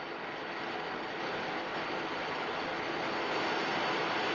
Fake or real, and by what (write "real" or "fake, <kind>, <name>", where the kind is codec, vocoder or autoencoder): real